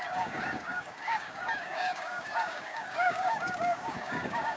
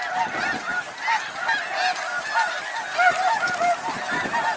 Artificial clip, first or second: first